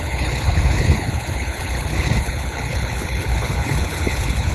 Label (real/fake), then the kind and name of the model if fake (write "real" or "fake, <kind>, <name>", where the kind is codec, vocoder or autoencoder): fake, codec, HILCodec